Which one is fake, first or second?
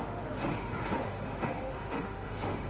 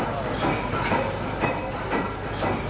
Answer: first